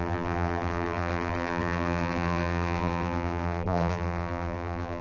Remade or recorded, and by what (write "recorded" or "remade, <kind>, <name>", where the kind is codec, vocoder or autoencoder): remade, vocoder, BigVGAN v2